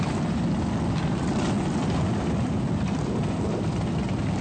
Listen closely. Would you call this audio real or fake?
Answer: real